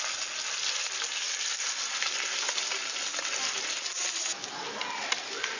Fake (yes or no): no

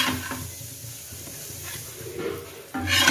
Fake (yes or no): no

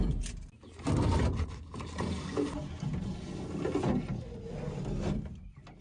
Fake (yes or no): no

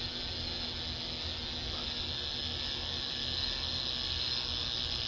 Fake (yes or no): no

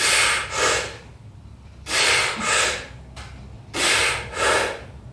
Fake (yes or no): no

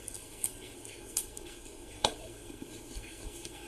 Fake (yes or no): yes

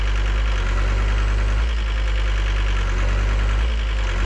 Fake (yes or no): no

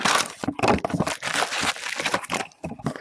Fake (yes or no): no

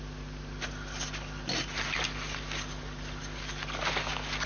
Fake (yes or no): no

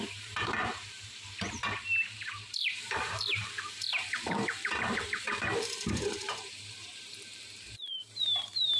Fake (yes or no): yes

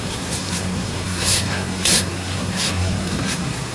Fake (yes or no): yes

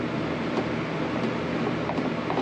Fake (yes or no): no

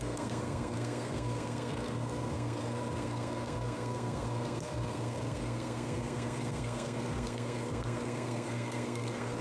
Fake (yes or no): yes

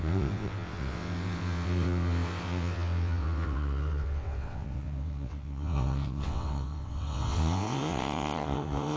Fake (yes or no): yes